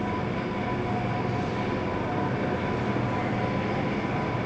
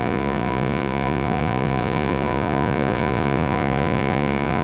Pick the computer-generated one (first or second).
second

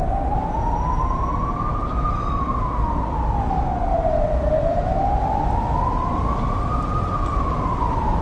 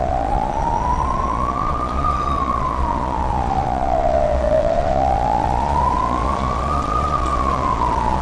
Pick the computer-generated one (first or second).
second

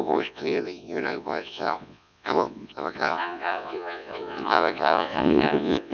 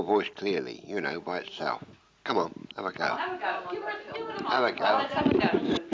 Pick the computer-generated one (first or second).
first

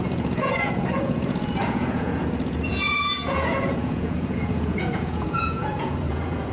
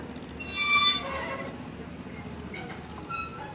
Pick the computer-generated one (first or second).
first